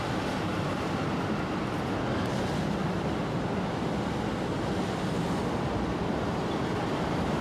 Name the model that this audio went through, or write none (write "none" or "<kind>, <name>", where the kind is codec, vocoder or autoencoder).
none